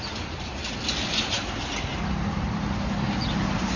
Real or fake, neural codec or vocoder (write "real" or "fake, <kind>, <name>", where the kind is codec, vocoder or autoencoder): real